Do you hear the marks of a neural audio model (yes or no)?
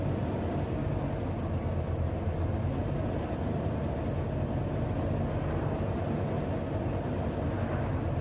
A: no